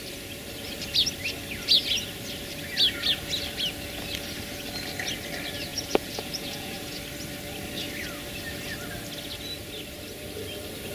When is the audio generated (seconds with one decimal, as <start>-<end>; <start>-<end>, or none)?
5.7-7.0